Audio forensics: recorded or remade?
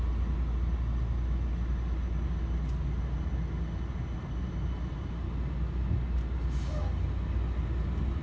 recorded